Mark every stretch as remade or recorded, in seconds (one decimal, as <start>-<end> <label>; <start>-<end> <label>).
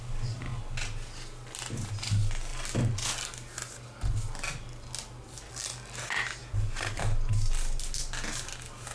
0.0-8.9 recorded